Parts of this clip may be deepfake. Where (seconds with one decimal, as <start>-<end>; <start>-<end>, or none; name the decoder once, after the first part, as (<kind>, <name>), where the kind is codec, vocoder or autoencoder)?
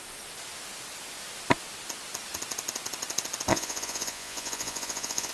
3.5-5.3 (vocoder, Vocos)